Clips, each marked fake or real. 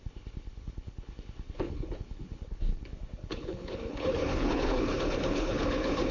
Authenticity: fake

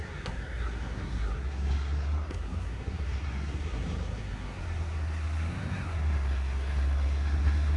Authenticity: fake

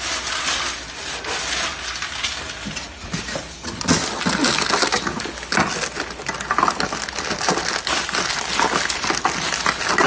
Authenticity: real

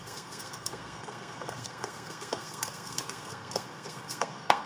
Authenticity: fake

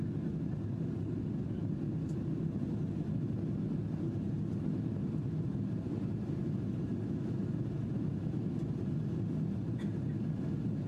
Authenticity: real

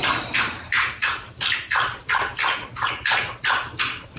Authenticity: real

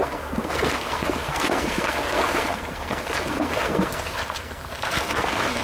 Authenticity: fake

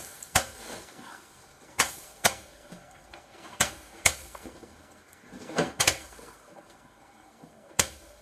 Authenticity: fake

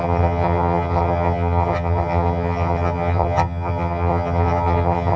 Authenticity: fake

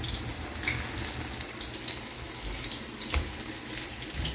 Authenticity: real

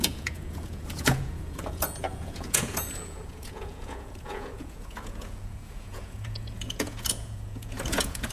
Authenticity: fake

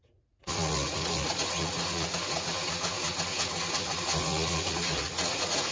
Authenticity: fake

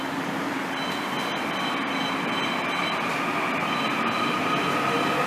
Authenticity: real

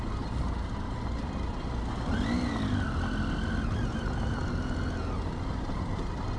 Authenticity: real